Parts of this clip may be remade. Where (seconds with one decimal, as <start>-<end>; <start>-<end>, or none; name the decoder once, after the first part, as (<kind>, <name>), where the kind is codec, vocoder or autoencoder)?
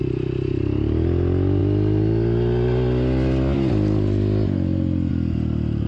none